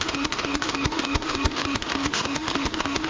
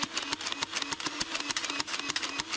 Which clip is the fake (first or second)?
first